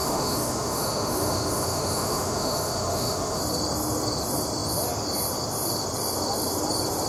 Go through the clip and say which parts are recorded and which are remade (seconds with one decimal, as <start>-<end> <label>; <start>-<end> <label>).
0.0-3.4 remade; 3.4-7.1 recorded